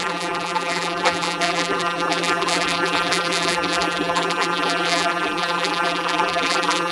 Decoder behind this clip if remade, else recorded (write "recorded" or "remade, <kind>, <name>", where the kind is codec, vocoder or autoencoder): remade, vocoder, BigVGAN v2